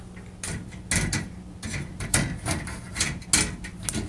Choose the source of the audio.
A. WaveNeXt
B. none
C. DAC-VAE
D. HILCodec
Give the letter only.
B